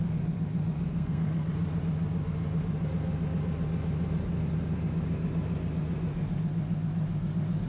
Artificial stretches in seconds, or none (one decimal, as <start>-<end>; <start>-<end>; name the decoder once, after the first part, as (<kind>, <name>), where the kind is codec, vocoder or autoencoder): 0.9-1.5 (codec, SNAC)